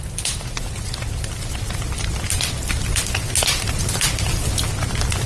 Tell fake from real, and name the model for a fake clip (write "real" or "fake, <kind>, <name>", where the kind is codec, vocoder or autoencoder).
real